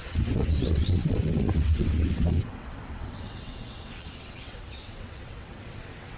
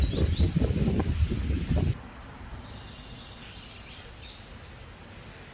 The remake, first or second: first